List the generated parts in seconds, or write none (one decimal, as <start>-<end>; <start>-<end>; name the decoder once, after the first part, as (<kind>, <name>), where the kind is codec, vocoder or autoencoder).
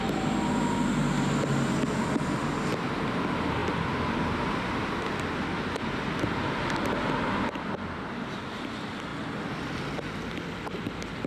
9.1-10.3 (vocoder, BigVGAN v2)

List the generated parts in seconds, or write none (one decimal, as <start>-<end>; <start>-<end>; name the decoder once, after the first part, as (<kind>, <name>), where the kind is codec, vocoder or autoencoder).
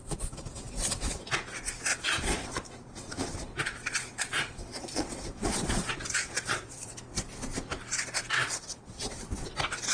0.0-1.3 (vocoder, Vocos); 1.9-6.9; 8.4-9.2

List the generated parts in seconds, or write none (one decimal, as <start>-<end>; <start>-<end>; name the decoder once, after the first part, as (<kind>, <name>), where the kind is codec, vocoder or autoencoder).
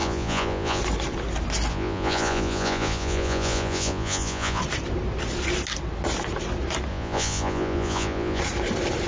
0.0-0.8 (vocoder, Vocos); 1.7-4.6; 6.9-8.4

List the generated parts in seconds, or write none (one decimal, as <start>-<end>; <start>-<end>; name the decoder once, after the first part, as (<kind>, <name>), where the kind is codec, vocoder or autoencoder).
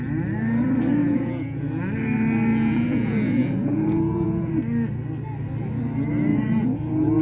1.0-1.6 (vocoder, Vocos); 2.5-4.5; 6.3-7.2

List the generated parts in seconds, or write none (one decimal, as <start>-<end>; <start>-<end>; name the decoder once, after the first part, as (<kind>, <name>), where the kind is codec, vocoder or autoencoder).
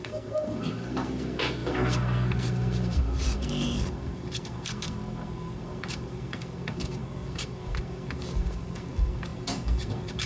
0.0-10.3 (codec, SNAC)